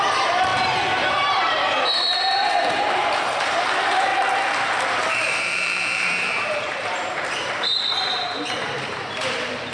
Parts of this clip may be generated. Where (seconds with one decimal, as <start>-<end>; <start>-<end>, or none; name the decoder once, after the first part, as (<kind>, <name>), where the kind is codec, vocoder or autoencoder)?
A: 0.0-4.1 (vocoder, BigVGAN v2); 4.9-9.7